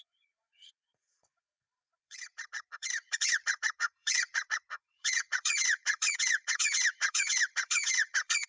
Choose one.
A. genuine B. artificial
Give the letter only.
B